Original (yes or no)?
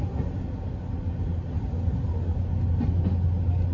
yes